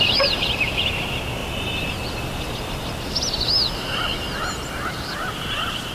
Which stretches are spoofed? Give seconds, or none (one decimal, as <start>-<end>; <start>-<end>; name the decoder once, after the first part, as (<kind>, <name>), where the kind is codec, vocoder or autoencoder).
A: none